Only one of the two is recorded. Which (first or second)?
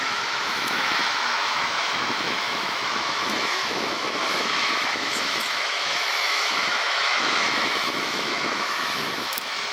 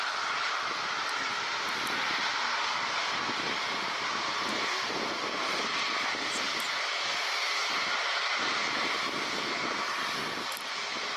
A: second